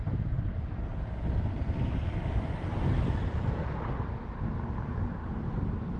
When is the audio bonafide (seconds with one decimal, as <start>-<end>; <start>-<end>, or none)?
0.0-5.2